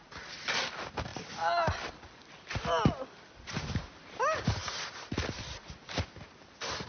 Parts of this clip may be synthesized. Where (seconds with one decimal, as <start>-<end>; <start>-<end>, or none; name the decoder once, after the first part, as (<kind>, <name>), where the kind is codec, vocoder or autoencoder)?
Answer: none

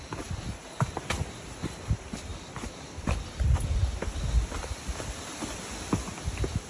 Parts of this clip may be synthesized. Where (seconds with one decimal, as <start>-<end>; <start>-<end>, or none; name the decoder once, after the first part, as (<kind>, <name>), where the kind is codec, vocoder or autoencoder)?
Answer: none

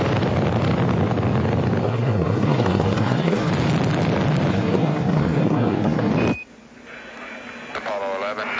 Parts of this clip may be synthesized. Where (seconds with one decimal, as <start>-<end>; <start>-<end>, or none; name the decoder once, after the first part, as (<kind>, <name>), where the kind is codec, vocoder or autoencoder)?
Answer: 1.8-3.5 (codec, SNAC); 4.5-6.1

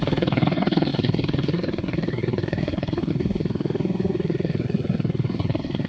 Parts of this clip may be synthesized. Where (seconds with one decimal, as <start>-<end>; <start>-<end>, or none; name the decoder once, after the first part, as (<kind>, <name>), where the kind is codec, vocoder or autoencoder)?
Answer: 0.0-5.9 (codec, SNAC)

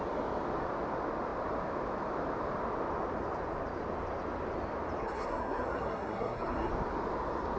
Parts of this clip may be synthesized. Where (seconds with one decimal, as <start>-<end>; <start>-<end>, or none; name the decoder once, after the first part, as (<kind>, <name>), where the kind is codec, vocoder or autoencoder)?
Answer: 5.0-6.7 (codec, SNAC)

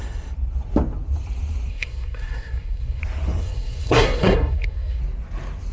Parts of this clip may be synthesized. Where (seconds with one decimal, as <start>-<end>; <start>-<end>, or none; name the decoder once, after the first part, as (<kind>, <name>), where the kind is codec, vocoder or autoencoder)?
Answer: 1.7-3.0 (codec, SNAC); 3.4-5.0